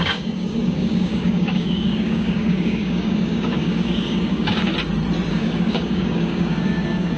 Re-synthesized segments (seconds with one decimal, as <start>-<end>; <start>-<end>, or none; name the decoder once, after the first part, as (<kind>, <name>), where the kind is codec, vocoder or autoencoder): 0.0-4.7 (codec, DAC); 5.3-7.2